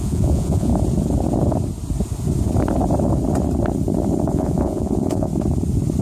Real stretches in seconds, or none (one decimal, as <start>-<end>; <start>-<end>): 0.7-4.3; 5.3-6.0